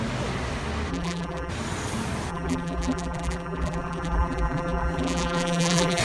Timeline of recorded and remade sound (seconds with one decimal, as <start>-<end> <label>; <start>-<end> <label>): 0.0-0.9 recorded; 0.9-1.5 remade; 1.5-2.3 recorded; 2.3-6.0 remade